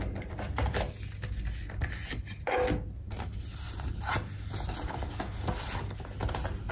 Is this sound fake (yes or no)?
no